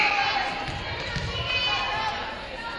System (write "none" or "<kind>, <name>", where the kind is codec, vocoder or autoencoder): none